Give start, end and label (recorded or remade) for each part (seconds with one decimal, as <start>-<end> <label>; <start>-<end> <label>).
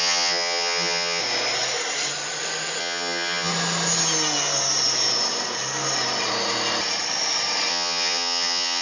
0.0-1.2 remade; 1.2-2.8 recorded; 2.8-3.5 remade; 3.5-7.7 recorded; 7.7-8.8 remade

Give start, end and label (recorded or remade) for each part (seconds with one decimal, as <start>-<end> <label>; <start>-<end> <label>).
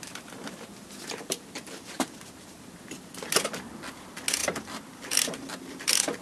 0.0-6.2 recorded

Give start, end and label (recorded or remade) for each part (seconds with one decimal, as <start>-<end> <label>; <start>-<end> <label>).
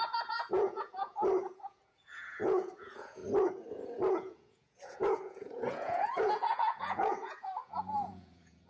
0.0-3.2 remade; 3.2-3.7 recorded; 3.7-8.7 remade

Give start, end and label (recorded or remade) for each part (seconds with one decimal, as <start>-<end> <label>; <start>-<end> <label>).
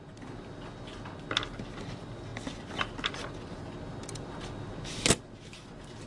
0.0-6.1 recorded